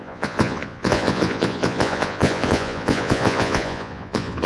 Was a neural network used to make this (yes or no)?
yes